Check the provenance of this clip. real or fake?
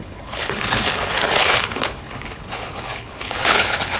fake